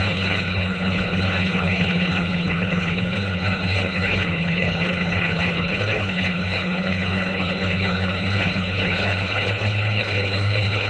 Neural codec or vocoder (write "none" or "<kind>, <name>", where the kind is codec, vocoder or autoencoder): codec, HILCodec